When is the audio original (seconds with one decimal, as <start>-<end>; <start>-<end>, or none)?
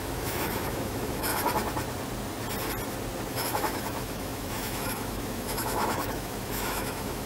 1.3-3.3